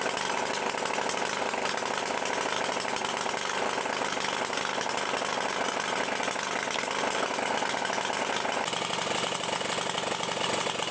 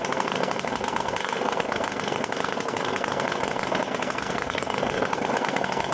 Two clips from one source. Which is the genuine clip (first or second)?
first